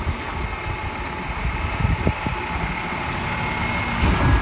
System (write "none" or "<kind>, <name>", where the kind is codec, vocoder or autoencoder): none